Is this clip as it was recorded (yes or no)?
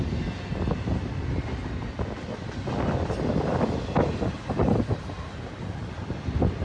yes